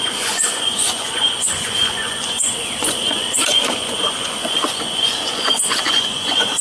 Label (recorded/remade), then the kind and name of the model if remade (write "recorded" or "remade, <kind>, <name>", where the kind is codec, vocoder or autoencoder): remade, vocoder, Vocos